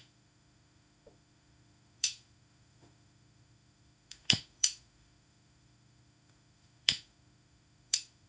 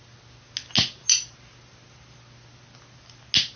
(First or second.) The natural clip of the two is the second